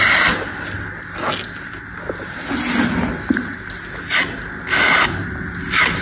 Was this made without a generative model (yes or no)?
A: yes